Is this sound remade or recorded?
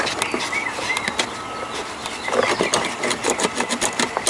recorded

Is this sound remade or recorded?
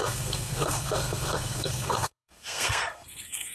remade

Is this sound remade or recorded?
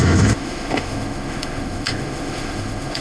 remade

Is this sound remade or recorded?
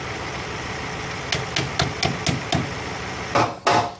recorded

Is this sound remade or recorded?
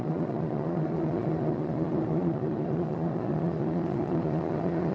remade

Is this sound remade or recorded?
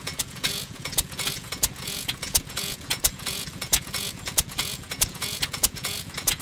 remade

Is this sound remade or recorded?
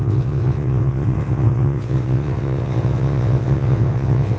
remade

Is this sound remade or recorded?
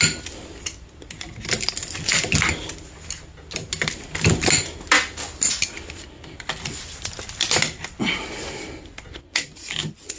recorded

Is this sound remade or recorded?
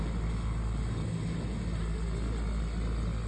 recorded